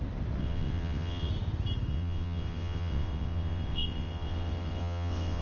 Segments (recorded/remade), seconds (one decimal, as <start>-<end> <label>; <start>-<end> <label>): 0.0-0.4 recorded; 0.4-1.3 remade; 1.3-1.9 recorded; 1.9-5.4 remade